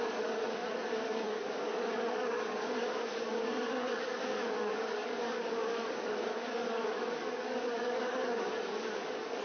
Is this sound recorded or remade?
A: remade